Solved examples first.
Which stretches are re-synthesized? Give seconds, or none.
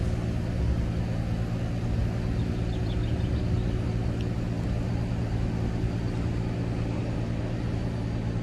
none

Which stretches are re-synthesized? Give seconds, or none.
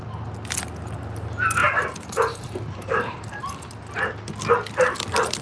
1.6-3.2 (vocoder, BigVGAN v2)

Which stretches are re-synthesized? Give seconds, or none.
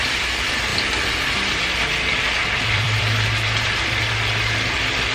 0.0-0.7 (vocoder, BigVGAN v2); 1.6-5.1